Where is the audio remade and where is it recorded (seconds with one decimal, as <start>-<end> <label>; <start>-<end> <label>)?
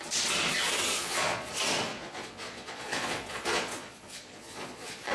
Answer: 0.0-0.9 recorded; 0.9-1.5 remade; 1.5-1.9 recorded; 1.9-5.1 remade